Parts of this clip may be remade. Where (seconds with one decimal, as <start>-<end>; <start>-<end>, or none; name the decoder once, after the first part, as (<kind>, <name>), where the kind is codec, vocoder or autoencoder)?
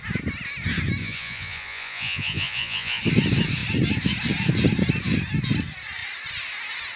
1.0-3.0 (vocoder, Vocos)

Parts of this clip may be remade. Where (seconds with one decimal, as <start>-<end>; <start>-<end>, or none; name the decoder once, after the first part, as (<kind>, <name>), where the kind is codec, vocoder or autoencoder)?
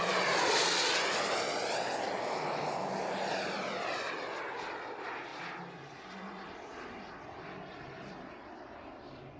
none